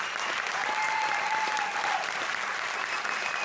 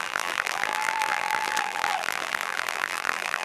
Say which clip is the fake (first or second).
second